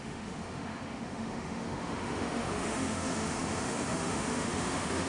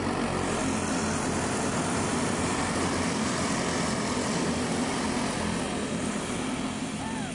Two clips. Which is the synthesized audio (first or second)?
first